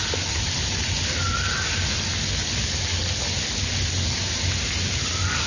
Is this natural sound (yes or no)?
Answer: yes